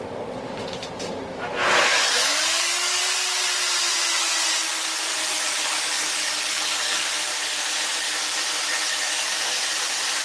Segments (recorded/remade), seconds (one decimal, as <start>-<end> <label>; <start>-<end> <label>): 0.0-2.2 recorded; 2.2-3.0 remade; 3.0-5.1 recorded; 5.1-7.3 remade; 7.3-8.9 recorded; 8.9-9.6 remade; 9.6-10.2 recorded